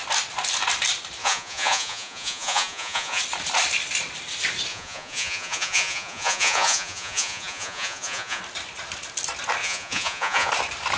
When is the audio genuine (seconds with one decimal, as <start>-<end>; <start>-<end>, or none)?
0.0-1.2; 3.2-4.7; 8.4-9.6; 10.5-11.0